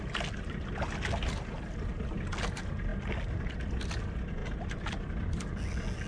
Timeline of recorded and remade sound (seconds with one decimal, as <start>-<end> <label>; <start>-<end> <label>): 0.0-6.1 recorded